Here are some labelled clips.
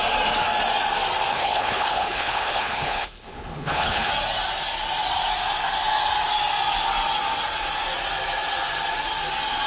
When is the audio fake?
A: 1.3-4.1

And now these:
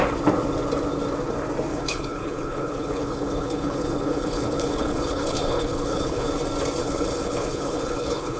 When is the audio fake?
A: 1.7-6.3; 6.8-8.4

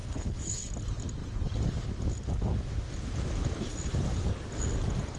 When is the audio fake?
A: 0.0-0.7

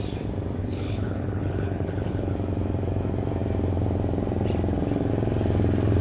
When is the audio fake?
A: 0.6-2.3

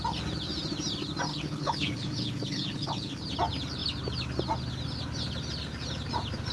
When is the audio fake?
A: 1.3-3.2